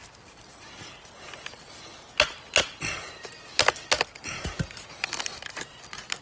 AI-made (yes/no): no